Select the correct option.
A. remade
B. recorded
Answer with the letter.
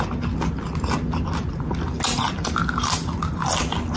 B